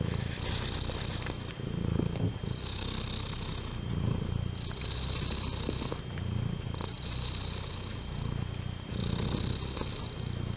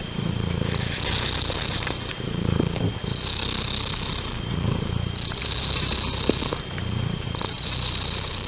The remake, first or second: second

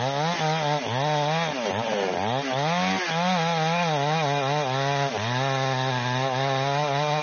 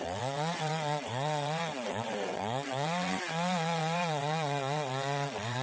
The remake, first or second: second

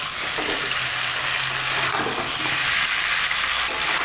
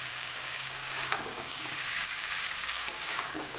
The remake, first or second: second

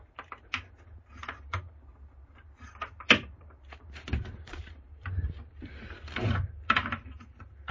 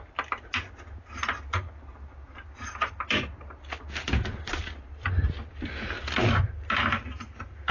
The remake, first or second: first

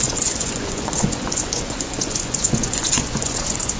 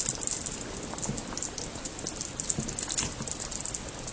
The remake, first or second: first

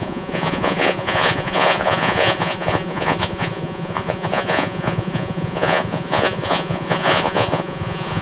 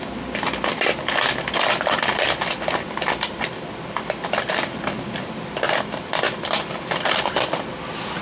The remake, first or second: first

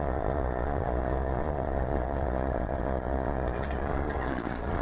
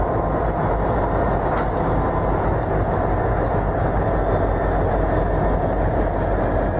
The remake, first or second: first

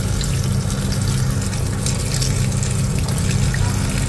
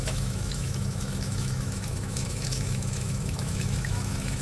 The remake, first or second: second